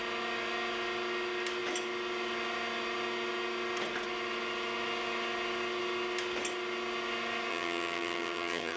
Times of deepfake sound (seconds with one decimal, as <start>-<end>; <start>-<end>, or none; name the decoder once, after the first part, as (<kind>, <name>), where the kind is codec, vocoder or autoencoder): 7.5-8.8 (vocoder, HiFi-GAN)